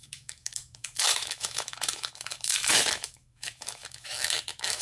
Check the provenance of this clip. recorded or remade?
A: remade